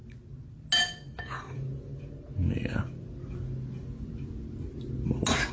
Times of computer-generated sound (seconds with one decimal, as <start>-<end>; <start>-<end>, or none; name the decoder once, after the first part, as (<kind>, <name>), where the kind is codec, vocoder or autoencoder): 1.2-1.9 (vocoder, Vocos)